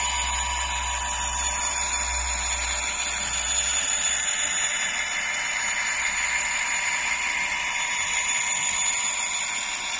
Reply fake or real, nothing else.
real